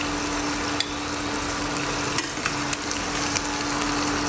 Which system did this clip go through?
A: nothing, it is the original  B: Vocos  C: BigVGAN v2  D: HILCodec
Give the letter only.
A